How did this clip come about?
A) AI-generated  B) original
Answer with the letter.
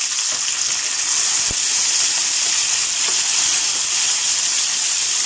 B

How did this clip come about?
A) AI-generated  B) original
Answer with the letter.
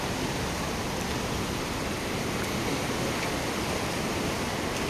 B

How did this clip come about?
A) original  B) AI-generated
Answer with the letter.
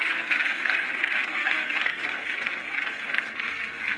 B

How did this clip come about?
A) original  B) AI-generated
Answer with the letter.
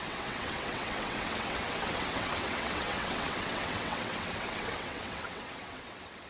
B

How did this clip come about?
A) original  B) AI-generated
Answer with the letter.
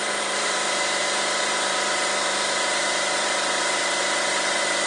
B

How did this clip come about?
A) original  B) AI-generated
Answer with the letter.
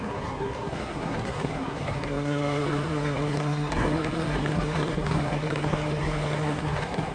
B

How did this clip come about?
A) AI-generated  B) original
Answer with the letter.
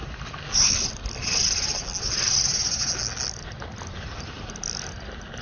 B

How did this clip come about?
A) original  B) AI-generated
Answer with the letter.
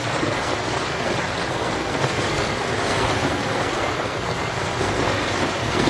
B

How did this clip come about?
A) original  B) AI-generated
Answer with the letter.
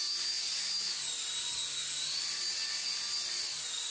A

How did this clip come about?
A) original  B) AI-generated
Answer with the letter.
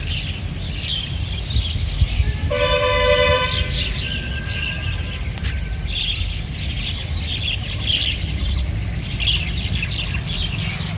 A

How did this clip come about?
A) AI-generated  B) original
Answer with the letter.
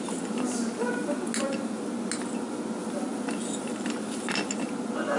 B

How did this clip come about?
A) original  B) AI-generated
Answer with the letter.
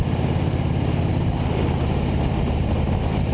A